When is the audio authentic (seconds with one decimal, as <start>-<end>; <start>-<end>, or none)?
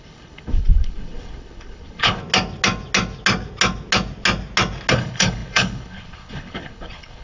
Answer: 2.2-4.9